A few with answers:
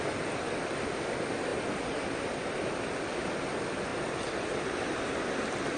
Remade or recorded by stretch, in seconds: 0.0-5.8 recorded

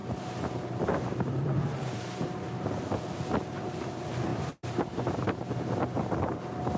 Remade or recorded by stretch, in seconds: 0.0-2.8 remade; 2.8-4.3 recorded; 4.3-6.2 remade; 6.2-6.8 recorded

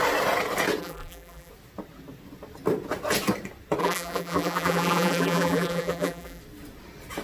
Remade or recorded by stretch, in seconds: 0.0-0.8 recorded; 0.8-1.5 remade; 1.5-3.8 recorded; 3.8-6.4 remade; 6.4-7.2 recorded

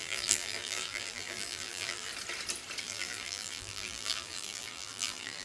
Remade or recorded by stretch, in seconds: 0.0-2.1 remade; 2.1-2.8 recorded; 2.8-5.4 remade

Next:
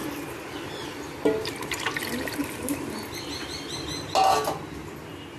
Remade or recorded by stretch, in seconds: 0.0-5.4 recorded

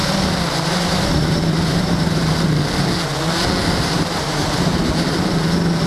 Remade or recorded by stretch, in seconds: 0.0-2.6 remade; 2.6-3.6 recorded; 3.6-4.9 remade; 4.9-5.9 recorded

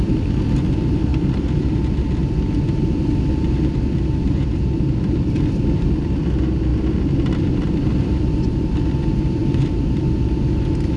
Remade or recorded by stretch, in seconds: 0.0-11.0 remade

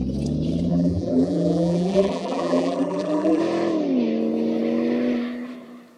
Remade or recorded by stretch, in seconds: 0.0-0.7 recorded; 0.7-3.4 remade; 3.4-6.0 recorded